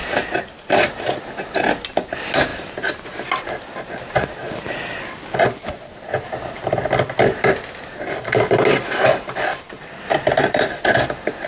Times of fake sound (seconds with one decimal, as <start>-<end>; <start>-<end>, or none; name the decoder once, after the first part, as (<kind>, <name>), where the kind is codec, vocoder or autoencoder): 9.5-10.8 (vocoder, BigVGAN v2)